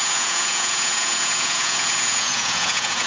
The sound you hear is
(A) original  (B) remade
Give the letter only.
B